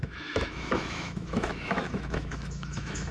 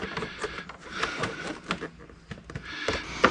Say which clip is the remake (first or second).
first